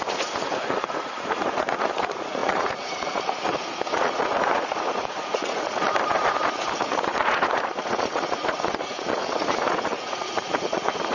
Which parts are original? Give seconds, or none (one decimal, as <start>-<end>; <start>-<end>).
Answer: none